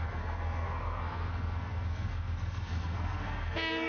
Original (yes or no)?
no